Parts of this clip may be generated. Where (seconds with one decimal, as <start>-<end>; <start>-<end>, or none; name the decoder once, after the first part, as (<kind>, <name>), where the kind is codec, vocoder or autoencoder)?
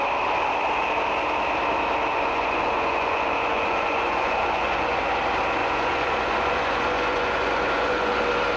2.1-5.0 (vocoder, Vocos); 5.6-8.2